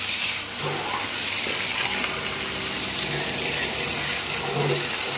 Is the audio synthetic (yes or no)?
no